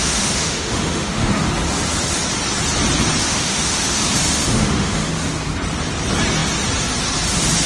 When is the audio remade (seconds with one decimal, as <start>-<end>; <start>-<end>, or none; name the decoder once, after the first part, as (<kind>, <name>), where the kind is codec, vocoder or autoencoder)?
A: 0.0-1.3 (autoencoder, DAC-VAE); 3.2-5.1